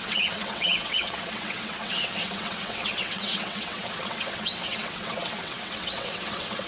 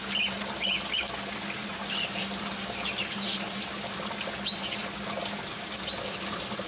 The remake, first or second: first